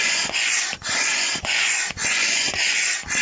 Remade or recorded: remade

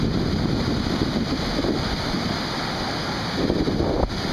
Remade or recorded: recorded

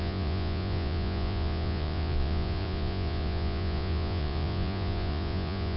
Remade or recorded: remade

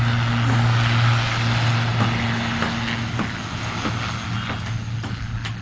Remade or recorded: recorded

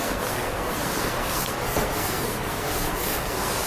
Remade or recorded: remade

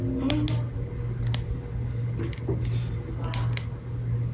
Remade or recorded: recorded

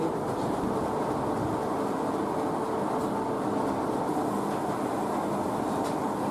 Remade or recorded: recorded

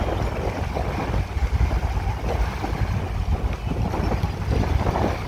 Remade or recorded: recorded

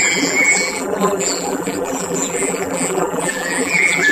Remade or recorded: remade